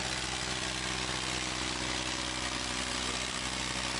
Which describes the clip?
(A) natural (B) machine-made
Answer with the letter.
B